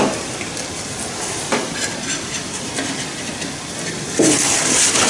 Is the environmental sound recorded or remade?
recorded